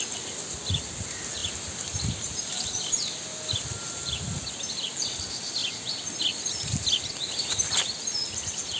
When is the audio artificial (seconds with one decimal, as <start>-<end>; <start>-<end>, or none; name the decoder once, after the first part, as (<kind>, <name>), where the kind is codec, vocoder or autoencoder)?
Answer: none